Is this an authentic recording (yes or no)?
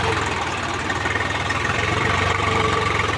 no